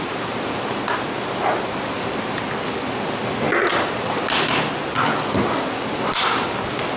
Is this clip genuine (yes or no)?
yes